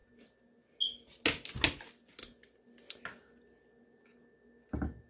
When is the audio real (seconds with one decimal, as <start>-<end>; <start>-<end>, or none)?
0.0-5.1